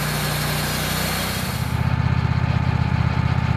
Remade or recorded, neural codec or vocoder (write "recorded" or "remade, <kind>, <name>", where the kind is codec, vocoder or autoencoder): recorded